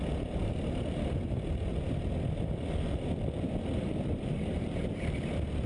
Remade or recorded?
remade